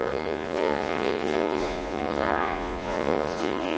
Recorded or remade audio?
remade